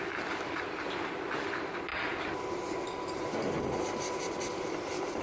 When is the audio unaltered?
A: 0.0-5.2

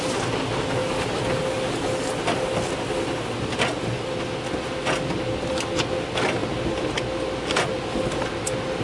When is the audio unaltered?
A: 0.0-8.8

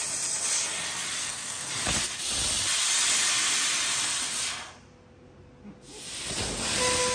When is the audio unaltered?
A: 0.0-1.2; 1.7-7.1

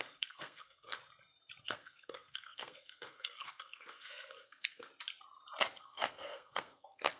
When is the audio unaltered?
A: 1.0-1.6; 4.9-5.8

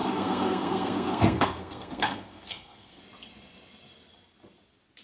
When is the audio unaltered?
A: 3.0-5.0

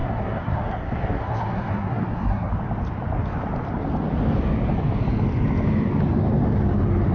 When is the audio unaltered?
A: 2.5-7.1

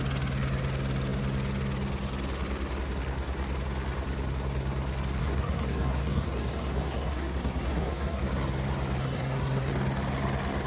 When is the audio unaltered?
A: 0.0-5.2; 8.2-9.0; 9.7-10.7